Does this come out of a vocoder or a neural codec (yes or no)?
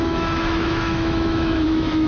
yes